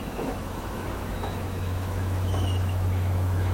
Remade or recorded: remade